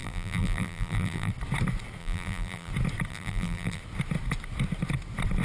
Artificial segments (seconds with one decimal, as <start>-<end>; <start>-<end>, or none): 0.0-1.3; 2.0-2.7; 3.1-3.8